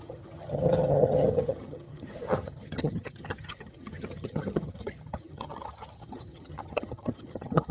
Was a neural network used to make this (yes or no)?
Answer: yes